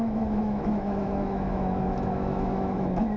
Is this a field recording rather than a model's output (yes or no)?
no